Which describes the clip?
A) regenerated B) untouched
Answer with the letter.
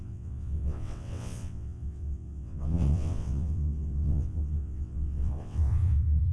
A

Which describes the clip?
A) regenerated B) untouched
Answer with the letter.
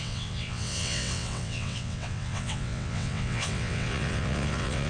A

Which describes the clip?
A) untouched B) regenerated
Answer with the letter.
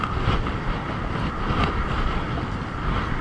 A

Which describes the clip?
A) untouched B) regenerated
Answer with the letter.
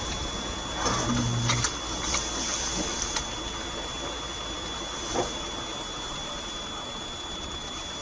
A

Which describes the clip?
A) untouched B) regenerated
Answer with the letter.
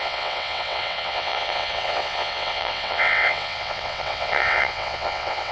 B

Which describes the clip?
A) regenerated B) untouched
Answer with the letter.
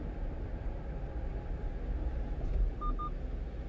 B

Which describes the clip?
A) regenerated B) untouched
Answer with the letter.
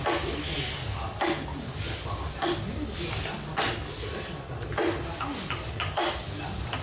B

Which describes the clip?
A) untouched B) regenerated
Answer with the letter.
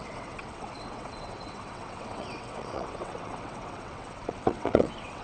B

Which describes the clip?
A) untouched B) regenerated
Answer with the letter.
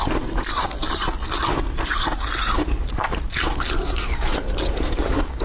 A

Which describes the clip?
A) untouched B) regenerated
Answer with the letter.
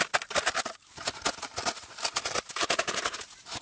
A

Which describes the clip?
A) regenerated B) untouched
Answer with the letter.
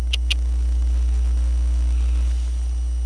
B